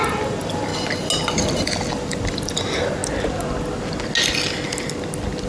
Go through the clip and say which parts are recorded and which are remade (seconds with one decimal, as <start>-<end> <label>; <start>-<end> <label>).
0.0-0.7 remade; 0.7-1.4 recorded; 1.4-3.0 remade; 3.0-5.5 recorded

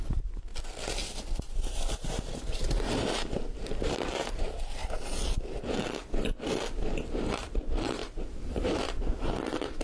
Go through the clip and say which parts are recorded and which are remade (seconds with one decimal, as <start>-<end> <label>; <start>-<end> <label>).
0.0-0.5 remade; 0.5-1.4 recorded; 1.4-4.8 remade; 4.8-7.3 recorded; 7.3-9.8 remade

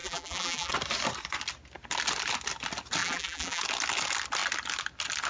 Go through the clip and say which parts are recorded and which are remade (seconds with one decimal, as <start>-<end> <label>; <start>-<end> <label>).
0.0-0.7 remade; 0.7-3.0 recorded; 3.0-3.6 remade; 3.6-5.3 recorded

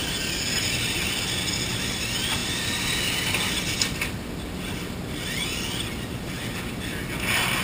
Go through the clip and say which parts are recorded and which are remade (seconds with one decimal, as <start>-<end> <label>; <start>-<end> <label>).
0.0-7.6 recorded

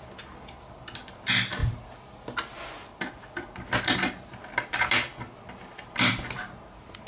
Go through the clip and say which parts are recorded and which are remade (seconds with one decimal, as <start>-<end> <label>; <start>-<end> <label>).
0.0-7.1 recorded